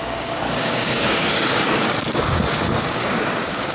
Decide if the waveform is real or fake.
fake